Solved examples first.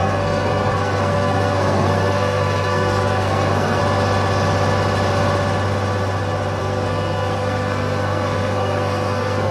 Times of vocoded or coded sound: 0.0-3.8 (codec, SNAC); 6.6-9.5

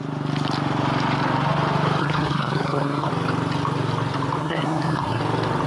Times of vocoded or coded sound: 2.0-3.1 (codec, SNAC); 4.4-5.2

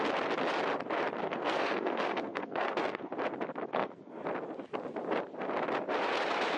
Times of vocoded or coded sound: 1.2-3.1 (codec, SNAC); 3.7-4.2

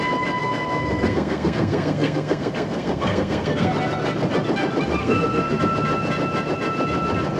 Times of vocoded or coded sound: 0.4-3.7 (codec, SNAC); 5.0-5.6

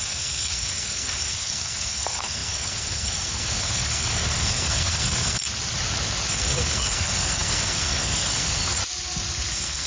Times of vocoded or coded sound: 0.0-5.4 (codec, SNAC); 6.3-8.8; 9.5-9.9

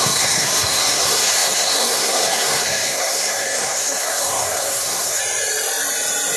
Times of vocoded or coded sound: 0.0-5.2 (codec, SNAC)

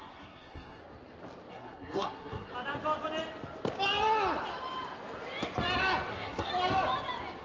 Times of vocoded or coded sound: 0.0-0.8 (codec, SNAC); 1.5-2.5; 6.1-6.5

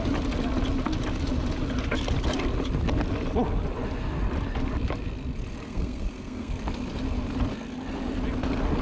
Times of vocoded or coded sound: 5.6-6.6 (codec, SNAC)